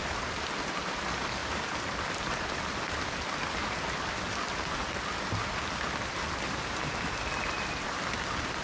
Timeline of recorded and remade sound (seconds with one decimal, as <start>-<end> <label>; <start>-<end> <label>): 0.0-8.6 recorded